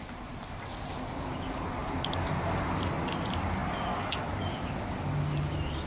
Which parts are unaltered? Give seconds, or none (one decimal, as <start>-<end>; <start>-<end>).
1.8-2.9; 3.6-5.9